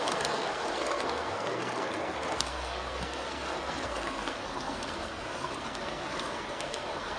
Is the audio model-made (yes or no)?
yes